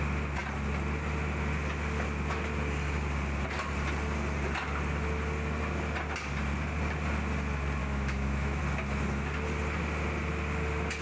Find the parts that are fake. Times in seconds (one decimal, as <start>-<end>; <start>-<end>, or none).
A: 7.8-8.6